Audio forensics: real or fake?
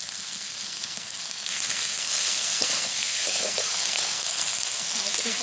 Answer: fake